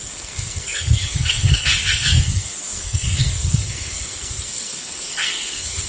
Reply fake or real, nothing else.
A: fake